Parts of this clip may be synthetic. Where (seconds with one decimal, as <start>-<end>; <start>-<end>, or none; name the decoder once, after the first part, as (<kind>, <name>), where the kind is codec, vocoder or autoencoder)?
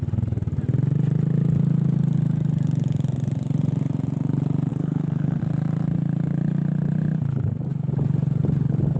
4.7-5.4 (codec, SNAC)